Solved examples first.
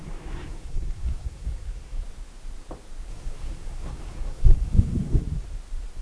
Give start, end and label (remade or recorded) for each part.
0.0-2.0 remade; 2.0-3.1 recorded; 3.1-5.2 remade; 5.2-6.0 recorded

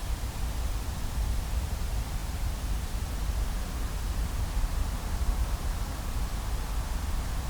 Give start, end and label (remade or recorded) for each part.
0.0-1.7 remade; 1.7-2.2 recorded; 2.2-6.7 remade; 6.7-7.5 recorded

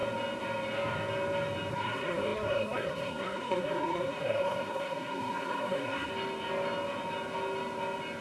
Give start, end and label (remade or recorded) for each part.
0.0-1.7 recorded; 1.7-6.1 remade; 6.1-8.2 recorded

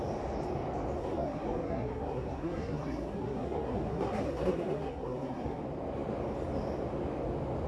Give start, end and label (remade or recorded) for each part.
0.0-1.0 recorded; 1.0-5.6 remade; 5.6-7.7 recorded